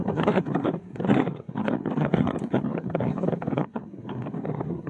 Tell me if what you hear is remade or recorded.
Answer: remade